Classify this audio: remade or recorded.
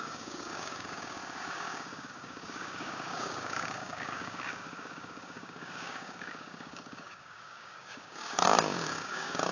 remade